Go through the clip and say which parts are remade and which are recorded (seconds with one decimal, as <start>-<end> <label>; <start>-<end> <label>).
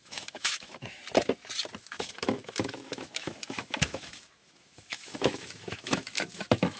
0.0-1.0 remade; 1.0-1.8 recorded; 1.8-6.8 remade